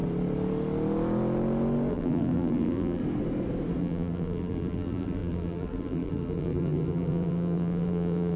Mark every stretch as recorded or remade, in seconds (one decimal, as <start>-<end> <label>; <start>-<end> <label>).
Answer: 0.0-1.9 recorded; 1.9-3.0 remade; 3.0-3.8 recorded; 3.8-8.4 remade